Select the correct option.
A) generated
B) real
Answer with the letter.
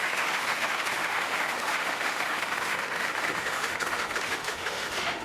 A